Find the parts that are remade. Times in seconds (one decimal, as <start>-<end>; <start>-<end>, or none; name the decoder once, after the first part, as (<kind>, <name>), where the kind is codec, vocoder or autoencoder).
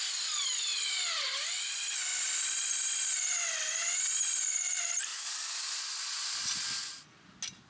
none